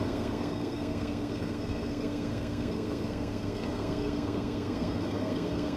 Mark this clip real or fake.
fake